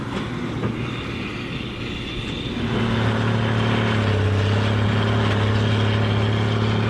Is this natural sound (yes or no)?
yes